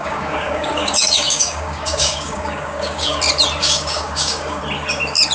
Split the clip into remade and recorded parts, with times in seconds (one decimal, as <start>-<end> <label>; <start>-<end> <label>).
0.0-3.2 remade; 3.2-3.6 recorded; 3.6-4.6 remade; 4.6-5.3 recorded